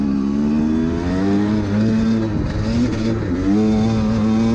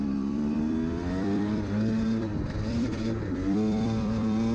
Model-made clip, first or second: second